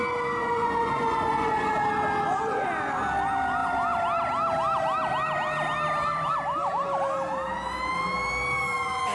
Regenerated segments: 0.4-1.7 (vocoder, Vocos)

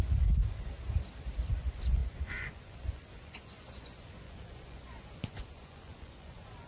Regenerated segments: 0.0-0.7 (vocoder, Vocos); 1.5-6.7

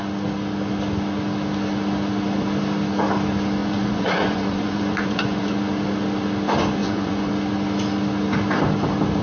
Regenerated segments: 3.6-5.6 (vocoder, Vocos); 6.8-7.3

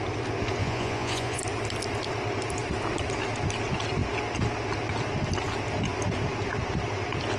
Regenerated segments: 0.6-1.4 (vocoder, Vocos)

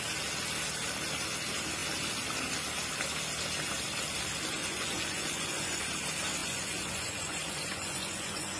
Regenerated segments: 4.6-5.9 (vocoder, Vocos); 6.4-8.6

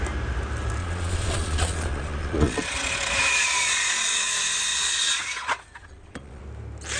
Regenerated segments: 0.8-4.3 (vocoder, Vocos); 4.7-6.4

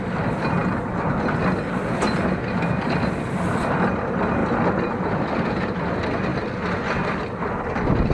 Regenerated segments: none

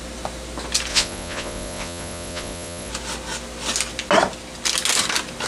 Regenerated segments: 0.9-2.9 (vocoder, Vocos)